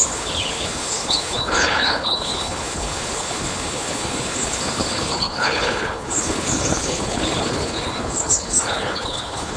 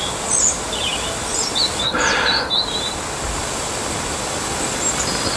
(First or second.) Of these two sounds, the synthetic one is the first